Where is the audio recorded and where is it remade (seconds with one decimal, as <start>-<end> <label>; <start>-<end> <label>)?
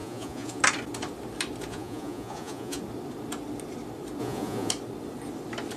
0.0-0.6 remade; 0.6-1.7 recorded; 1.7-2.8 remade; 2.8-4.2 recorded; 4.2-4.7 remade; 4.7-5.8 recorded